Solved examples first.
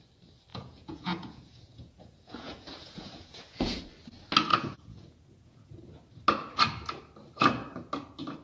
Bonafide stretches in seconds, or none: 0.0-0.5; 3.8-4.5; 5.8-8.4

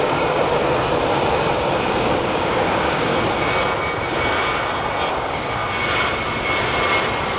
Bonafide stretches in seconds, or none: 0.6-1.7; 3.1-5.1; 5.6-7.4

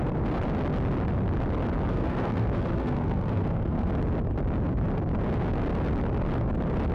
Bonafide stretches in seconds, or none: 0.0-1.9; 3.9-6.9

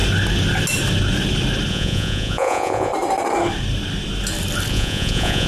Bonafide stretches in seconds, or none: 0.0-1.7; 2.9-4.7

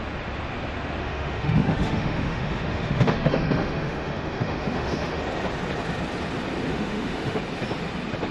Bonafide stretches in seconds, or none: 0.0-1.0; 5.2-6.7; 7.4-8.3

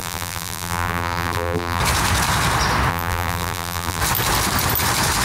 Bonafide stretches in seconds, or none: 1.8-2.9; 4.0-5.2

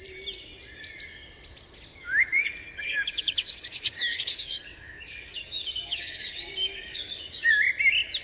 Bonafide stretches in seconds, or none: 0.0-1.9; 6.3-6.7; 7.5-8.2

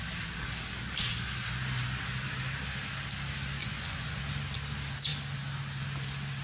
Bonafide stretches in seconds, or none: 0.0-3.6; 4.2-6.4